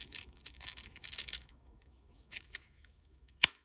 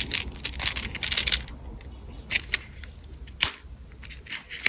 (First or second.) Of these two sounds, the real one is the second